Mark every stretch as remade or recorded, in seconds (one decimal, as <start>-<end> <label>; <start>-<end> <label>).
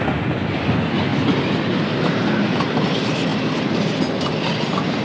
0.0-5.0 recorded